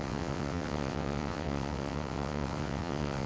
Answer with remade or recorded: remade